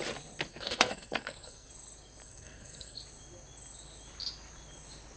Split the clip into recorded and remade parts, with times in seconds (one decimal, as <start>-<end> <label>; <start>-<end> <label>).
0.0-0.5 recorded; 0.5-1.7 remade; 1.7-2.2 recorded; 2.2-3.0 remade; 3.0-5.2 recorded

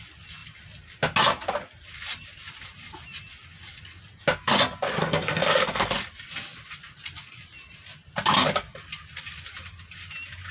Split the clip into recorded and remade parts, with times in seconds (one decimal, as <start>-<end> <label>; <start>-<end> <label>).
0.0-5.0 recorded; 5.0-5.8 remade; 5.8-10.5 recorded

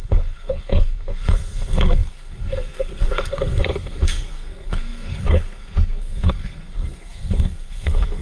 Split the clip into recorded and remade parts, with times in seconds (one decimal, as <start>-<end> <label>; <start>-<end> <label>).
0.0-8.2 remade

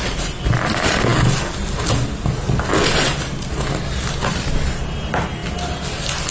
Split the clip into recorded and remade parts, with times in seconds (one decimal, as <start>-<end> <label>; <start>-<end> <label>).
0.0-6.3 recorded

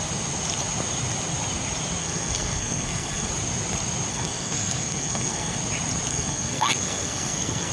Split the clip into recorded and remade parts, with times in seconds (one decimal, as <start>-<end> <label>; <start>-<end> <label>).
0.0-2.0 recorded; 2.0-3.3 remade; 3.3-4.1 recorded; 4.1-5.6 remade; 5.6-6.1 recorded; 6.1-7.7 remade

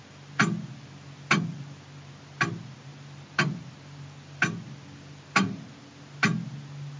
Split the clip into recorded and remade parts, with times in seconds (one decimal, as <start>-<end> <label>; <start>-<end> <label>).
0.0-7.0 recorded

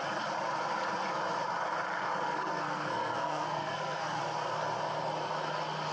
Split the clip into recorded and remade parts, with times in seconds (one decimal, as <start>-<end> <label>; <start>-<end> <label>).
0.0-2.2 recorded; 2.2-4.2 remade; 4.2-5.9 recorded